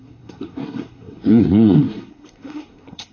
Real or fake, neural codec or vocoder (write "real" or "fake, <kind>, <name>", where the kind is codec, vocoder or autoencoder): fake, codec, SNAC